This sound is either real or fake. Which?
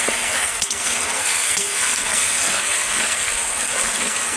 fake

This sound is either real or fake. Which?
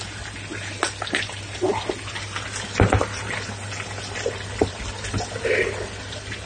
real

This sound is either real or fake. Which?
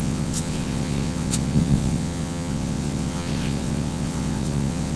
fake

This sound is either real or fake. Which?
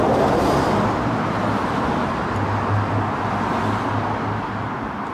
real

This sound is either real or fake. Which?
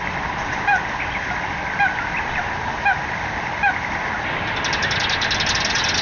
real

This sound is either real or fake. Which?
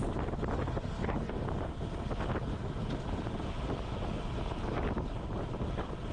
real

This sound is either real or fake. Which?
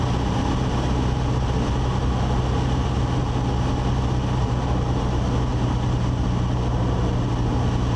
real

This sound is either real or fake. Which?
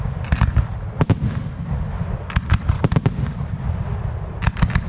real